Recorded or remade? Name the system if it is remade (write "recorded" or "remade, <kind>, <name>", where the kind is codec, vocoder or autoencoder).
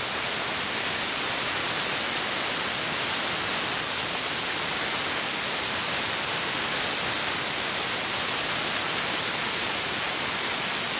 recorded